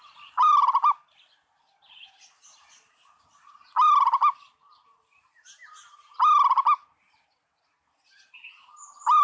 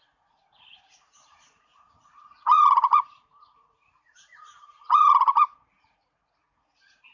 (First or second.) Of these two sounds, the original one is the first